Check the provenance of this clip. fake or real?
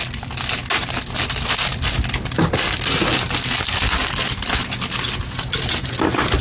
real